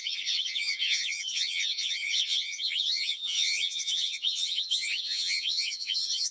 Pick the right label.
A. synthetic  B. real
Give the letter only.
A